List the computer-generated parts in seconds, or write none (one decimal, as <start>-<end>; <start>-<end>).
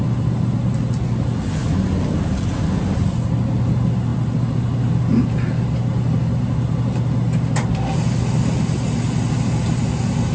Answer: none